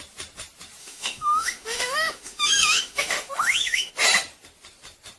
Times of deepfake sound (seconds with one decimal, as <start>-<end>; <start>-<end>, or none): 0.8-3.9